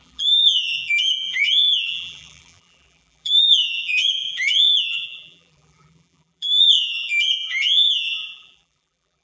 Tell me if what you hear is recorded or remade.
remade